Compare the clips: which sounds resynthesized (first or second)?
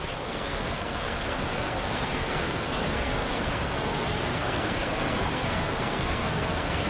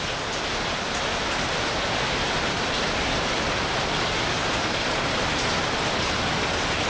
first